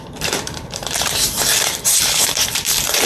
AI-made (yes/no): yes